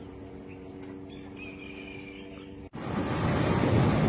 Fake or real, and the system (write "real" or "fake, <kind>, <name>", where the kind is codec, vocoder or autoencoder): real